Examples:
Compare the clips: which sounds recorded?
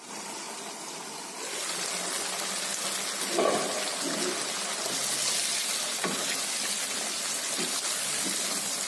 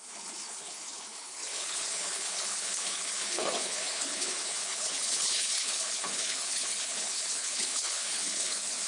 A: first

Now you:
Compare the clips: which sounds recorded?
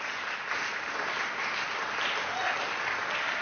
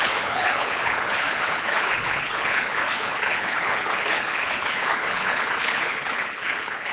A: first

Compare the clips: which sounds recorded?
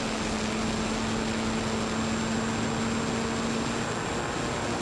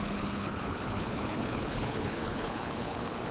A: first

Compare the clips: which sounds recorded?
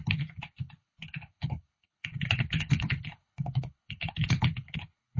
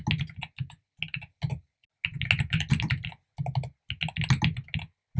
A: second